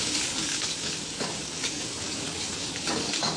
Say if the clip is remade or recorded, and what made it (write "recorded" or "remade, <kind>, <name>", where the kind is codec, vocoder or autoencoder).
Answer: remade, codec, DAC